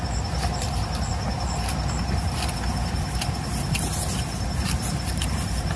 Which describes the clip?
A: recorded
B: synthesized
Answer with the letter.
A